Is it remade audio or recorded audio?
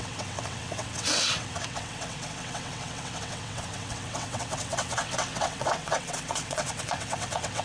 remade